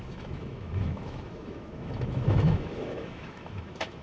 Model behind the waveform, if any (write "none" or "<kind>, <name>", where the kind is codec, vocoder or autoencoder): autoencoder, DAC-VAE